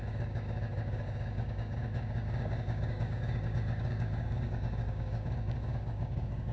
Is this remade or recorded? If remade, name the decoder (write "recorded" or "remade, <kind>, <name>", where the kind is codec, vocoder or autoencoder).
remade, codec, DAC